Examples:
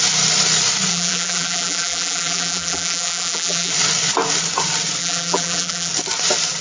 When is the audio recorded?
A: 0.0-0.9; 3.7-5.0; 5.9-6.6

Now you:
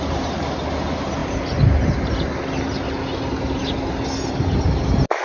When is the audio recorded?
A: 0.0-5.2

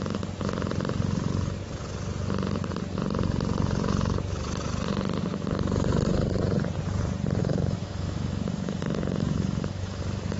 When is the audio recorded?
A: 0.0-7.4